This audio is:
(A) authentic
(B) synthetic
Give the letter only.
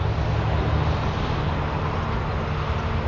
A